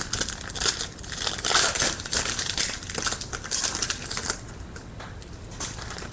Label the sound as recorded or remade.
recorded